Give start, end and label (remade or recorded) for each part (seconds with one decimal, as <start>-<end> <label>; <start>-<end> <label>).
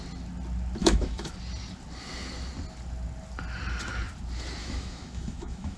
0.0-0.8 recorded; 0.8-1.3 remade; 1.3-4.6 recorded; 4.6-5.8 remade